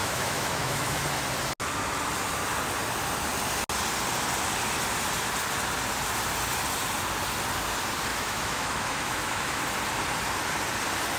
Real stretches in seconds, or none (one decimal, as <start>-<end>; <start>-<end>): 1.0-8.1; 9.6-11.2